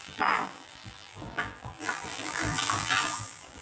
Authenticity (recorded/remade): remade